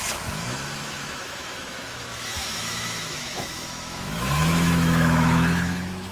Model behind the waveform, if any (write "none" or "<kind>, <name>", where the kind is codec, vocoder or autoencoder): autoencoder, DAC-VAE